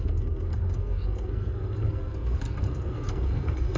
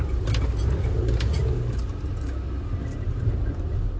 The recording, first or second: second